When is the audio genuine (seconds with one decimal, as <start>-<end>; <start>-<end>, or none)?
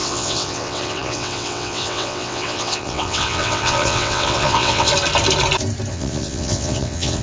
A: 4.9-5.9